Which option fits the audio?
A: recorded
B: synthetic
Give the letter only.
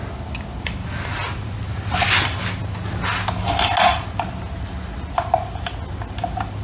A